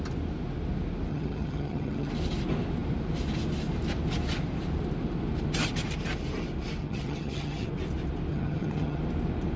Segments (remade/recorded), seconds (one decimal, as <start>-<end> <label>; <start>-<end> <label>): 0.0-1.1 recorded; 1.1-2.1 remade; 2.1-6.8 recorded; 6.8-7.7 remade; 7.7-8.3 recorded; 8.3-9.0 remade; 9.0-9.6 recorded